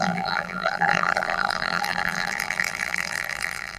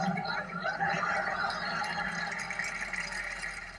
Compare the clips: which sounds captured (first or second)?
second